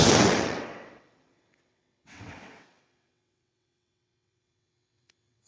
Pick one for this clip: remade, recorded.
remade